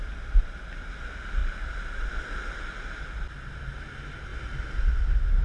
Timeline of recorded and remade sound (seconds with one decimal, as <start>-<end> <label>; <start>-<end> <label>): 0.0-1.4 recorded; 1.4-2.1 remade; 2.1-5.4 recorded